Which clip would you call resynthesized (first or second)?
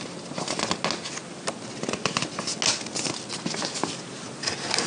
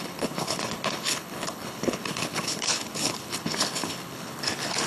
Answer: second